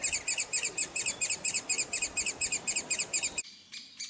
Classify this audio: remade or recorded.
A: recorded